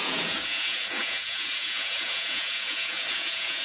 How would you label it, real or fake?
fake